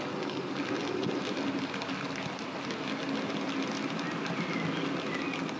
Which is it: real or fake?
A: real